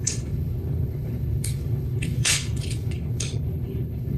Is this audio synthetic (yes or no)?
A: yes